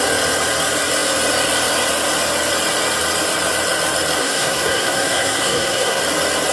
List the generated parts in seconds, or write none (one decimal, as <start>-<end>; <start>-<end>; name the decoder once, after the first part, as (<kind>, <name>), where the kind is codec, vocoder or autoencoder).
4.2-6.0 (codec, SNAC)